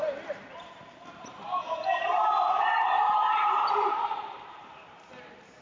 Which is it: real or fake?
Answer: fake